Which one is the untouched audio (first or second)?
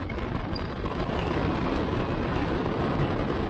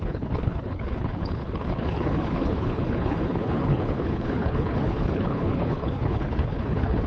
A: first